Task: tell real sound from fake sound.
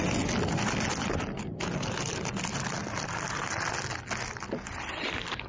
real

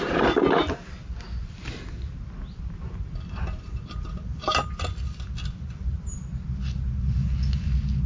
real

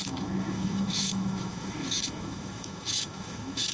fake